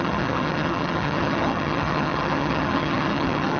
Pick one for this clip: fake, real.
fake